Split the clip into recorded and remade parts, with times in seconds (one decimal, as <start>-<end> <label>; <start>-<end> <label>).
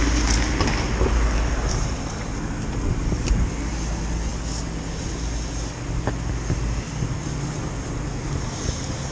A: 0.0-9.1 recorded